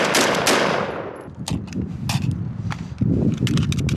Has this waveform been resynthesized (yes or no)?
no